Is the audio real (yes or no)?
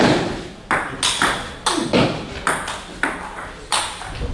yes